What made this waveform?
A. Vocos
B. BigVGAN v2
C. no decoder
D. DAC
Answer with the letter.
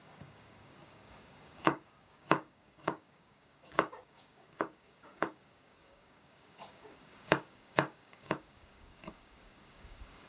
D